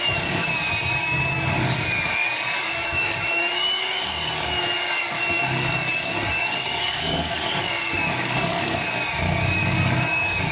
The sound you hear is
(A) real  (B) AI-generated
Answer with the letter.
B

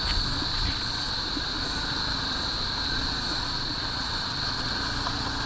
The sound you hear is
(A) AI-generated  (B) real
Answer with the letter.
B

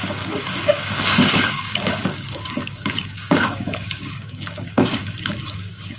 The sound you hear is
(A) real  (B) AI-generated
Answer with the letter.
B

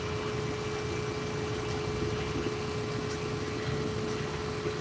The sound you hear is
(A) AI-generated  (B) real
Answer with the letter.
B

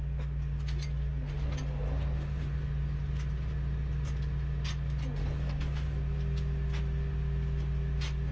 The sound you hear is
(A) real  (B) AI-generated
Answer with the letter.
A